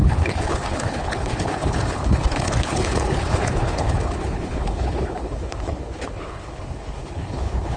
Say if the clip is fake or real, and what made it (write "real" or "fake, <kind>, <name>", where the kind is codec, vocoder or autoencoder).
fake, codec, HILCodec